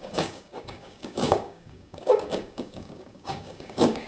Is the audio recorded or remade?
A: remade